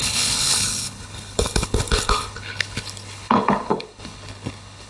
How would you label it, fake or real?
fake